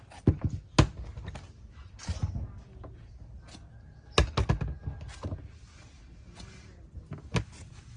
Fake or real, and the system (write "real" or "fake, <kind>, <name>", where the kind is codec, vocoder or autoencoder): real